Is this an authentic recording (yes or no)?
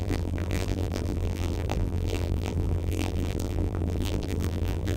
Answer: no